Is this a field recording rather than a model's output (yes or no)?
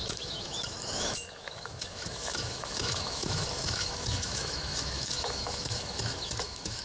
no